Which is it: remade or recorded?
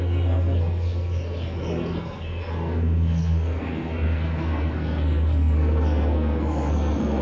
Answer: remade